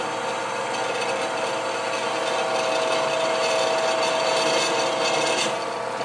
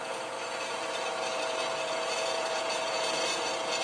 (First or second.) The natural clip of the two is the first